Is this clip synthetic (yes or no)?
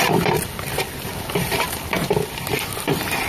no